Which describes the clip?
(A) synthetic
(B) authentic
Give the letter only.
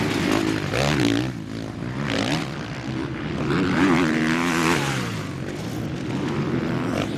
B